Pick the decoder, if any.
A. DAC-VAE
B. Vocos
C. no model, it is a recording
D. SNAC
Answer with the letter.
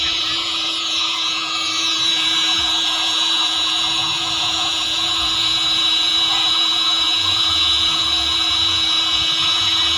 B